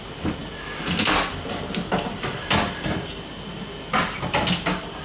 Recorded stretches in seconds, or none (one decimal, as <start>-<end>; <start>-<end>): 0.0-5.0